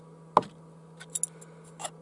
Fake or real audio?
real